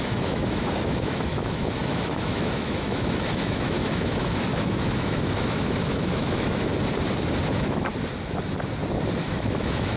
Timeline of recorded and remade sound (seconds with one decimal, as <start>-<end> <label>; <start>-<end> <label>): 0.0-6.7 remade; 6.7-7.5 recorded; 7.5-7.9 remade; 7.9-9.2 recorded; 9.2-10.0 remade

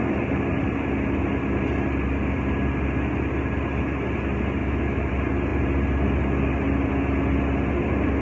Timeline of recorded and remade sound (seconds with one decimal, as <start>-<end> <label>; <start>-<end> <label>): 0.0-4.6 recorded; 4.6-5.1 remade; 5.1-8.2 recorded

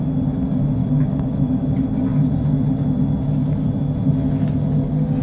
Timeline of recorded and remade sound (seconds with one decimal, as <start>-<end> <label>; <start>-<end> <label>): 0.0-0.8 recorded; 0.8-1.5 remade; 1.5-5.2 recorded

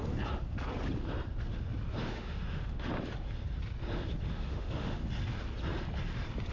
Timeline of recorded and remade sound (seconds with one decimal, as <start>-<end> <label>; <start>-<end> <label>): 0.0-2.0 recorded; 2.0-2.9 remade; 2.9-4.3 recorded; 4.3-5.0 remade; 5.0-6.5 recorded

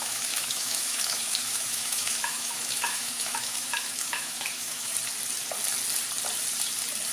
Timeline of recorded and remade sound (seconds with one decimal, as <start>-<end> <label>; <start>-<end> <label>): 0.0-4.9 remade; 4.9-7.1 recorded